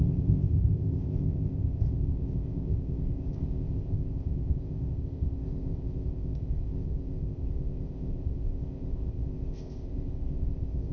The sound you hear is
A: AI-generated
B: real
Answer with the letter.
A